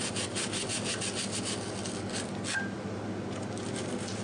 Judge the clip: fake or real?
real